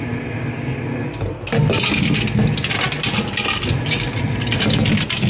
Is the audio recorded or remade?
recorded